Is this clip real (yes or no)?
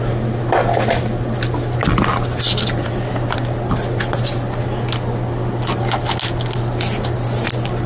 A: yes